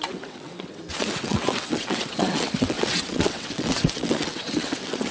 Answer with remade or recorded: remade